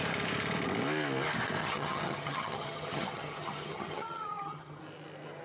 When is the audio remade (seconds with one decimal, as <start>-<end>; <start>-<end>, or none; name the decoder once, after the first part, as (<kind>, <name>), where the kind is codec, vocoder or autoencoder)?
1.6-4.8 (vocoder, HiFi-GAN)